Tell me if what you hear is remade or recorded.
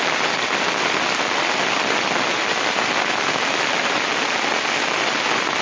recorded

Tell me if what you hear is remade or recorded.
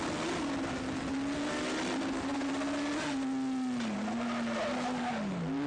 recorded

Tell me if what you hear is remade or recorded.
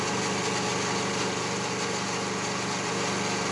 recorded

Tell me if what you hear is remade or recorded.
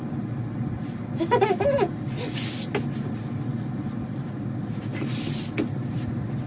recorded